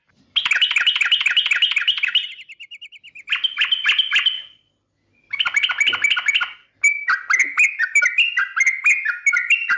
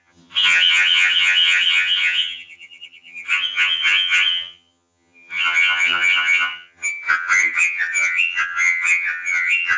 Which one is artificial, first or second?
second